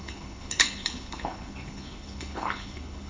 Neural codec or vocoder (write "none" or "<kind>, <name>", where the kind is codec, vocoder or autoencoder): codec, HILCodec